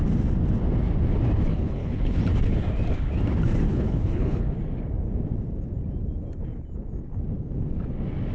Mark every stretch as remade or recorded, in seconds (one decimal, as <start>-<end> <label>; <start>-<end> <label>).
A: 0.0-1.5 recorded; 1.5-2.2 remade; 2.2-3.7 recorded; 3.7-4.4 remade; 4.4-8.3 recorded